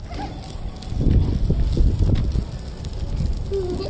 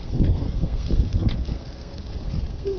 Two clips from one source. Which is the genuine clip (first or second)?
first